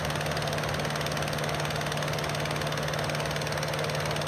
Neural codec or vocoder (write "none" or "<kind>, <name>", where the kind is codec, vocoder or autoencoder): none